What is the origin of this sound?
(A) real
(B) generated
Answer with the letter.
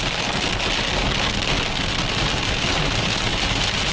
A